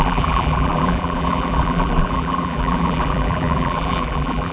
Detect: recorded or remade remade